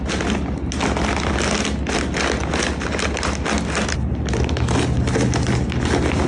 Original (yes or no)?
yes